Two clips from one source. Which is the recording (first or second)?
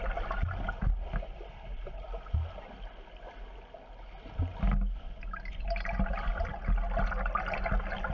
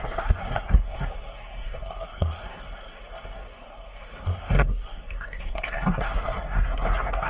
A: first